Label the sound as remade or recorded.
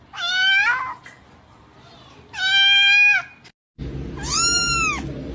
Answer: recorded